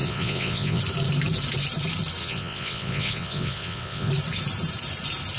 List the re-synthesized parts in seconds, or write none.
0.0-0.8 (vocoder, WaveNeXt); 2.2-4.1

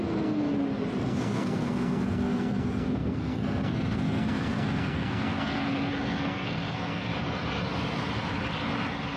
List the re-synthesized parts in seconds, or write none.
0.0-0.5 (codec, SNAC); 1.0-7.1

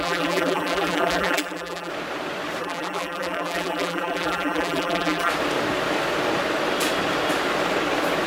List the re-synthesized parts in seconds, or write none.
0.0-1.9 (vocoder, BigVGAN v2); 2.6-5.3

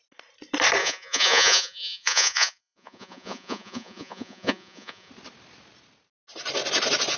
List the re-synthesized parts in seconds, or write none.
0.8-5.1 (vocoder, Vocos)